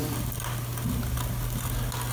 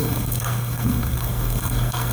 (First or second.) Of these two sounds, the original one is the first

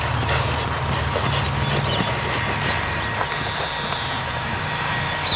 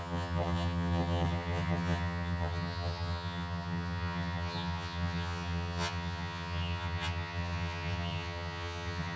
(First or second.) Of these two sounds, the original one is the first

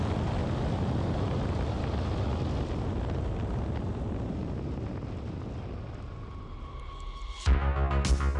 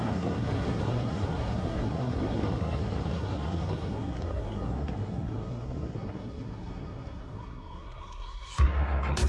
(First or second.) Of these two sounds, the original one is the first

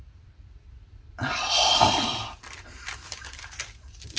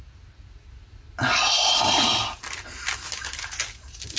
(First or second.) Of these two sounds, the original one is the second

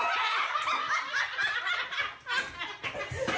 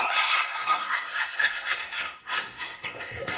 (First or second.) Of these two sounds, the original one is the first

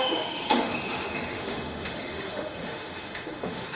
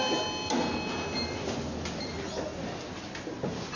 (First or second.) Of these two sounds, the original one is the second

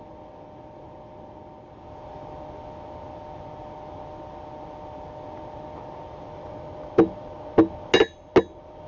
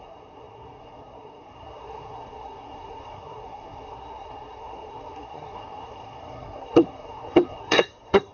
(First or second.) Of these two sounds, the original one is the first